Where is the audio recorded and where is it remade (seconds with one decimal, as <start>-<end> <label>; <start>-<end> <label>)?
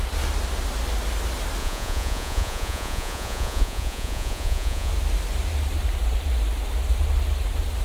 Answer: 0.0-1.6 recorded; 1.6-4.9 remade; 4.9-7.8 recorded